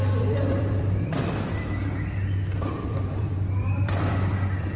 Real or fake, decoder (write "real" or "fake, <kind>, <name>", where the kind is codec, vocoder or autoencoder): fake, vocoder, BigVGAN v2